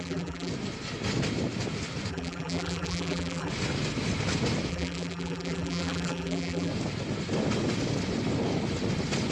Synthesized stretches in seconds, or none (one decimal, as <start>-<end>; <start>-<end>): 0.0-0.5; 2.1-3.5; 4.7-6.7